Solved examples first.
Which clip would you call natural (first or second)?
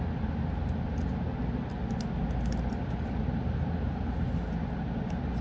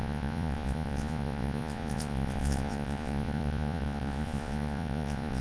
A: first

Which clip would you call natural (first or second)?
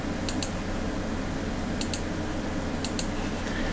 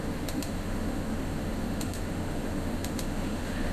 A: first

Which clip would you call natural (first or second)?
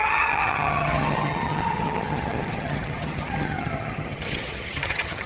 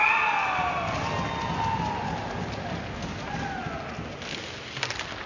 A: second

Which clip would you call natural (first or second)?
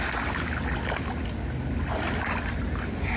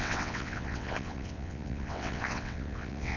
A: first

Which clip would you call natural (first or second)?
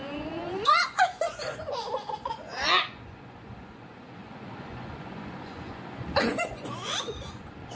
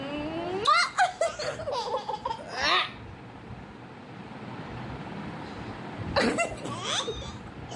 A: second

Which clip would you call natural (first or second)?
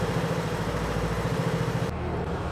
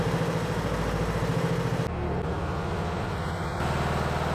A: second